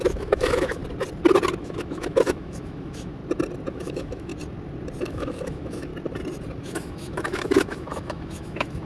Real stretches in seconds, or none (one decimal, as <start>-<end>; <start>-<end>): 0.8-1.6; 3.2-3.7; 4.3-5.0; 5.9-6.6

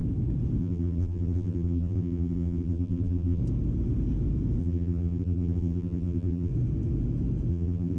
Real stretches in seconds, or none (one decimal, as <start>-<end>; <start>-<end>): 0.0-0.6; 3.4-4.6; 6.5-7.5

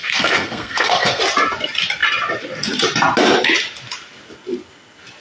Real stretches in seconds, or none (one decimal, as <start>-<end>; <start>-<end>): 1.2-5.2

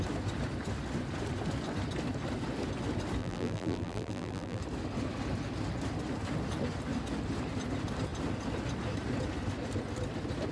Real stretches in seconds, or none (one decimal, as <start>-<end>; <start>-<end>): 0.0-3.2; 4.6-10.5

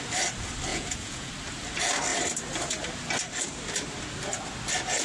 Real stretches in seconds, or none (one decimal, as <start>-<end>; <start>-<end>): 0.0-0.7; 1.3-5.0

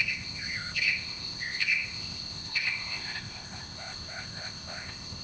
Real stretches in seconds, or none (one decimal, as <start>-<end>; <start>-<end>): none